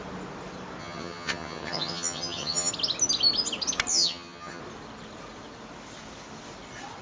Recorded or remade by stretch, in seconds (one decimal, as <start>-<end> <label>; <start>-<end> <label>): 0.0-0.8 recorded; 0.8-2.7 remade; 2.7-3.9 recorded; 3.9-4.6 remade; 4.6-7.0 recorded